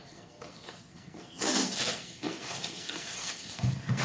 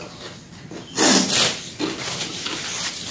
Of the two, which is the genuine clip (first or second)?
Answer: second